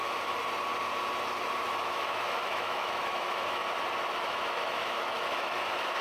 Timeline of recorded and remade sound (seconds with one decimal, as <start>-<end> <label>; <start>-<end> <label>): 0.0-0.4 remade; 0.4-1.8 recorded; 1.8-3.6 remade; 3.6-4.2 recorded; 4.2-6.0 remade